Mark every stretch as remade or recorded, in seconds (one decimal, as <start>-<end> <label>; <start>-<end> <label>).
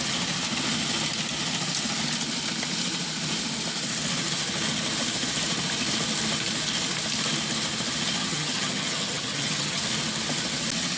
0.0-8.2 recorded; 8.2-9.8 remade; 9.8-11.0 recorded